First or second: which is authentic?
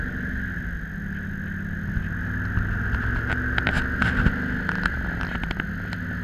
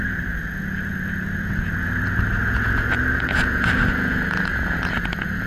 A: first